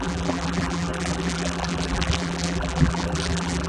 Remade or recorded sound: remade